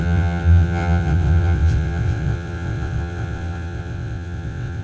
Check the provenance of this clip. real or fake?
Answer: fake